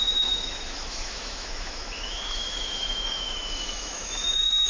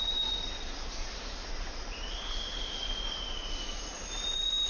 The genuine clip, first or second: second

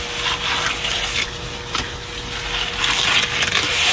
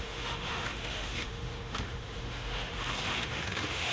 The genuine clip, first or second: first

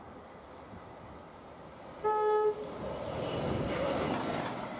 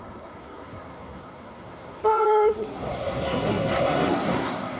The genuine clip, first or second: first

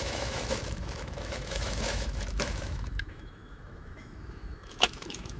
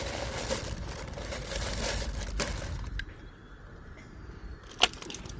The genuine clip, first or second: second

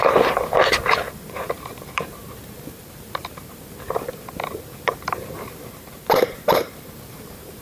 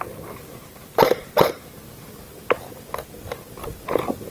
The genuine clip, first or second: second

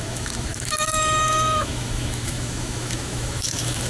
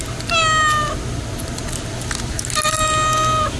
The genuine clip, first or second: second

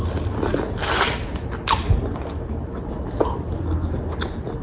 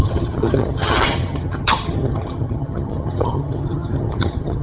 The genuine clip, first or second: first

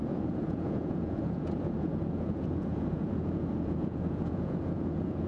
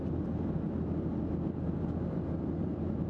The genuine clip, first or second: second